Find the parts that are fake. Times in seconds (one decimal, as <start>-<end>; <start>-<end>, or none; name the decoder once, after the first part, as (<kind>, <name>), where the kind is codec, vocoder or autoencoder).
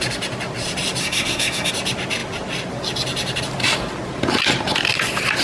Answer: 1.0-1.7 (codec, SNAC)